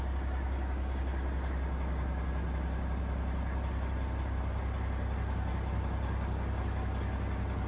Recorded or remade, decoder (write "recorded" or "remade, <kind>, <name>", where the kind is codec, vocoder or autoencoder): recorded